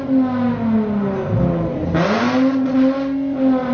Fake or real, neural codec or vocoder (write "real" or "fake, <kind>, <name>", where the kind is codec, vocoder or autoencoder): real